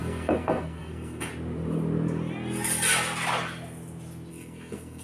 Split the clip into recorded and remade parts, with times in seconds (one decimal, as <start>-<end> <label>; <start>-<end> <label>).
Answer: 0.0-1.3 remade; 1.3-4.3 recorded; 4.3-5.0 remade